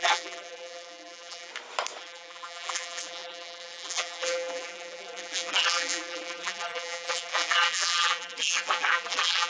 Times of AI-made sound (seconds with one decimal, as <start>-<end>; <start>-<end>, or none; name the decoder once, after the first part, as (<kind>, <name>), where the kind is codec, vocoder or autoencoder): 0.0-1.5 (vocoder, BigVGAN v2); 2.0-9.5